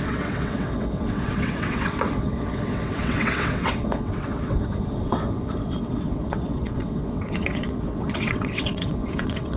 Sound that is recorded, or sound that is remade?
remade